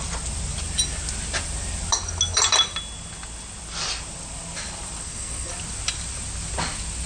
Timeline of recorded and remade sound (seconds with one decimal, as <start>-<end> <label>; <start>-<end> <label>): 0.0-5.0 recorded; 5.0-5.5 remade; 5.5-7.1 recorded